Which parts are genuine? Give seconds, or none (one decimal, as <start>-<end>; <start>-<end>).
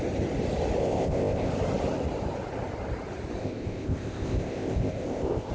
0.0-0.8; 1.5-3.4